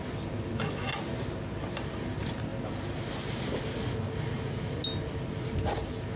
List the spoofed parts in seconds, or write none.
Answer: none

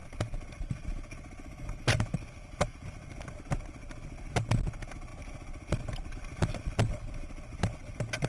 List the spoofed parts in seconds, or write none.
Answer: none

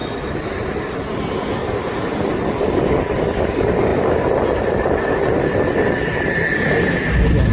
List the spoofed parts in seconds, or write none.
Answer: 0.0-7.5